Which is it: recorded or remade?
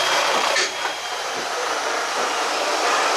remade